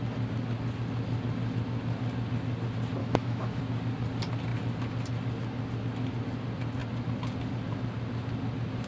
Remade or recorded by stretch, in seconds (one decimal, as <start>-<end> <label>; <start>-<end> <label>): 0.0-3.0 recorded; 3.0-3.6 remade; 3.6-8.9 recorded